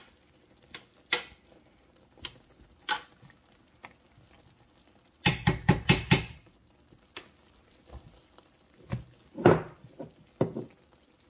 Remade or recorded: recorded